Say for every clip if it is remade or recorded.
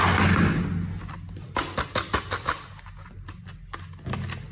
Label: recorded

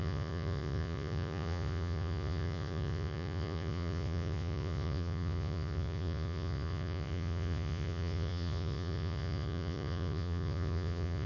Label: remade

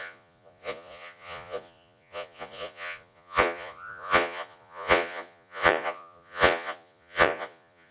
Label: remade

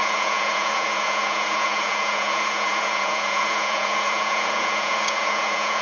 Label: remade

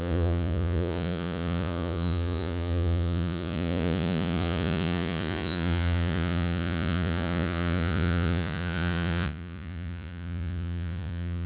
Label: remade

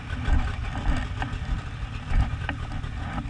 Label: recorded